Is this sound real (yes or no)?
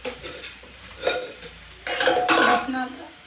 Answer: no